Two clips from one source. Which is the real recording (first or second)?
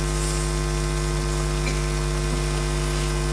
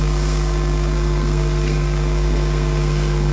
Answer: first